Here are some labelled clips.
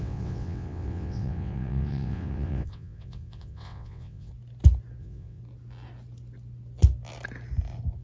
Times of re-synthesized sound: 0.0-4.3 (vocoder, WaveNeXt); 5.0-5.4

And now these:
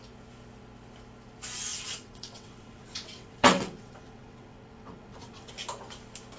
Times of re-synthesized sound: 1.7-5.5 (vocoder, WaveNeXt)

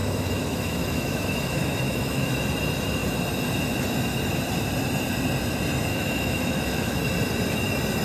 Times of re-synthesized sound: 0.0-2.3 (autoencoder, DAC-VAE); 5.9-7.0

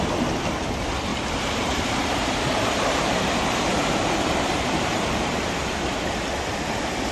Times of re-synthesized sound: 1.1-5.4 (vocoder, BigVGAN v2)

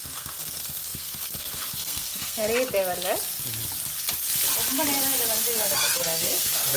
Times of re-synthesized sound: 0.0-2.4 (codec, SNAC); 5.5-6.8

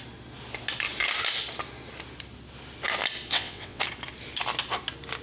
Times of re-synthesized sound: 3.3-3.8 (vocoder, WaveNeXt)

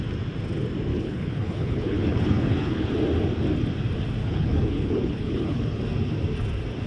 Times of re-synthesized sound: 0.9-2.9 (codec, HILCodec); 4.2-5.8

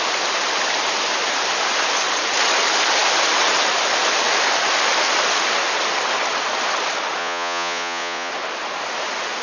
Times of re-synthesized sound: 7.2-8.3 (vocoder, Vocos)